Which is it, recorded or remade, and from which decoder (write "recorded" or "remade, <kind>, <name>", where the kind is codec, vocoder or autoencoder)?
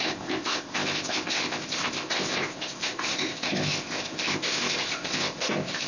remade, codec, ZipCodec